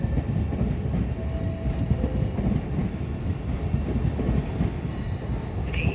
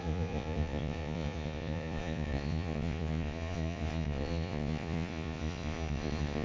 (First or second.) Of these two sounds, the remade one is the second